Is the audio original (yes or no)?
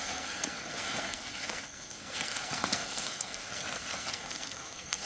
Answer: no